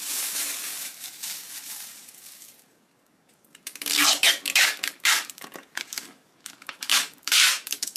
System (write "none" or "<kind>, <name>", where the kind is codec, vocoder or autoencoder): codec, DAC